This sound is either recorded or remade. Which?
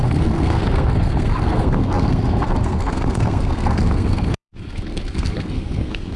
remade